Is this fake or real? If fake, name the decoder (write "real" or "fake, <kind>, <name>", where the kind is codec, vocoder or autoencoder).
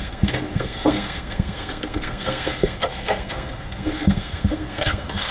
fake, codec, SNAC